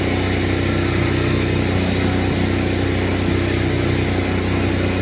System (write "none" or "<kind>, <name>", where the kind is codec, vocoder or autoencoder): none